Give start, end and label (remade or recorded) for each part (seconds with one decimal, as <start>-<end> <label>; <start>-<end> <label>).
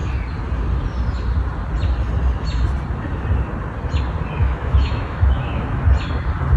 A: 0.0-4.4 recorded; 4.4-5.8 remade; 5.8-6.6 recorded